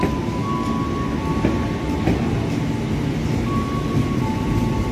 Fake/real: real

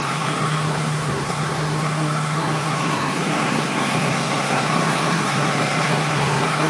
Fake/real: fake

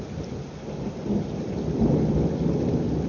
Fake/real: real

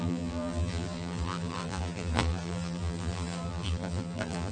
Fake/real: fake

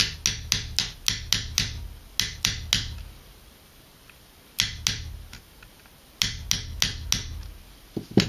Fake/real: real